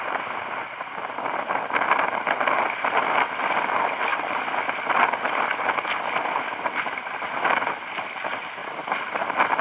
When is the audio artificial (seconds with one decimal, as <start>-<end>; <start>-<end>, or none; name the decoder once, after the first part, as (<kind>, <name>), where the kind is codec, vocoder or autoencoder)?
none